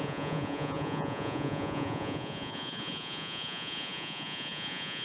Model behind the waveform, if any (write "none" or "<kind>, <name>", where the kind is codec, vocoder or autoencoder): vocoder, Vocos